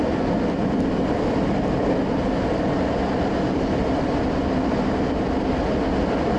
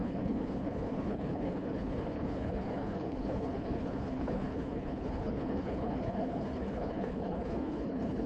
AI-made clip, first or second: second